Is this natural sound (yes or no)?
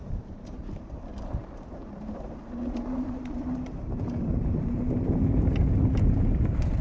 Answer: no